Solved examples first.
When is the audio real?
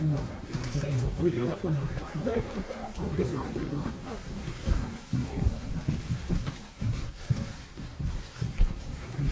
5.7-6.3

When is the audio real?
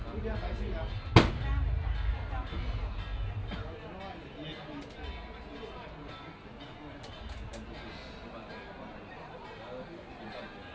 0.0-10.7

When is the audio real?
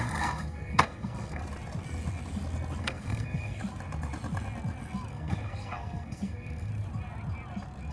1.4-2.8; 3.6-5.1; 6.7-7.9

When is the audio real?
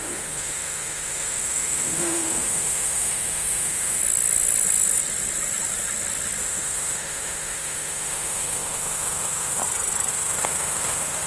4.0-6.4; 9.6-10.1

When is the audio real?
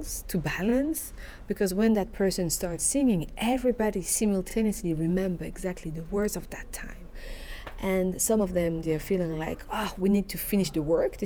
none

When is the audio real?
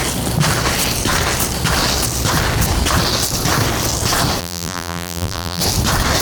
0.0-4.4; 5.6-6.2